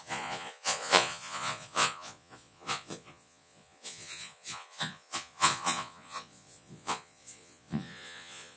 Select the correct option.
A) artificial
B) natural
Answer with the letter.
A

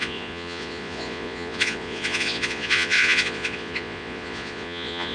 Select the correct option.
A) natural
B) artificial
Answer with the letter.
B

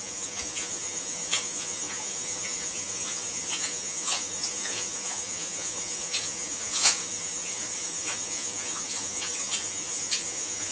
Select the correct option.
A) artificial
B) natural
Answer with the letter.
A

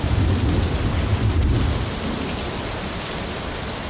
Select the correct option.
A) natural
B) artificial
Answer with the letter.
A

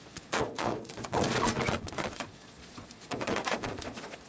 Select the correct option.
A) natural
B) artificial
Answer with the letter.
B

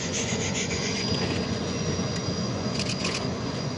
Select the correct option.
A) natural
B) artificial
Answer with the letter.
B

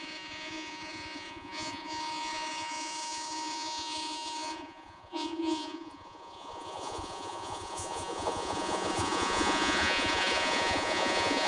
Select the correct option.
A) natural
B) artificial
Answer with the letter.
B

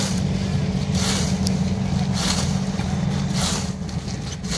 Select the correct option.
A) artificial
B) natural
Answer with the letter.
B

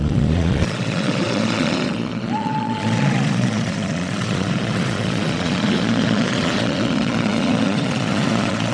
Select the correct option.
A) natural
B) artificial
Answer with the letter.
B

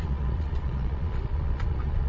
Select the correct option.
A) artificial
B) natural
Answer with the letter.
A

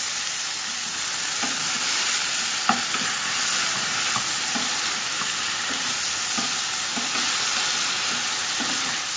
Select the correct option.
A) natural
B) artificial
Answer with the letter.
A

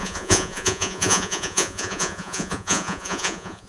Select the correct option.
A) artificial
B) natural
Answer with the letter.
A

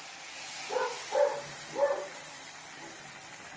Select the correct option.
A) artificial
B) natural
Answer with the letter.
B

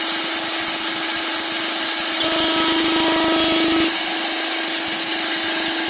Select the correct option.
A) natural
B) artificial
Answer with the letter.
A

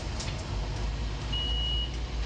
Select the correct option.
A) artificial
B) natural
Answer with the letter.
B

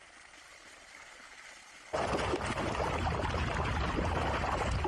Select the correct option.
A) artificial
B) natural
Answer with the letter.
B